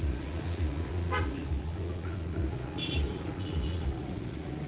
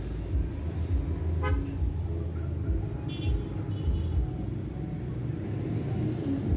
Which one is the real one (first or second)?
second